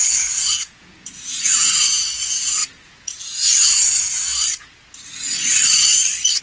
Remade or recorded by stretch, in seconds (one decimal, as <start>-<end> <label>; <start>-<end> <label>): 0.0-4.3 remade; 4.3-6.4 recorded